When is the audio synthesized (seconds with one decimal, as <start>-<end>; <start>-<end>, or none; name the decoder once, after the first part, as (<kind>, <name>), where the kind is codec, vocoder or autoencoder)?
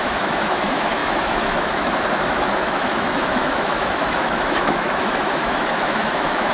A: 0.0-6.5 (autoencoder, DAC-VAE)